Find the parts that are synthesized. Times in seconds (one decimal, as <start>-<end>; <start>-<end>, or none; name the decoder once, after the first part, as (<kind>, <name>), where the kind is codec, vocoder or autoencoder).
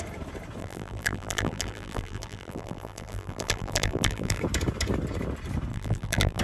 0.6-4.4 (vocoder, BigVGAN v2); 5.7-6.4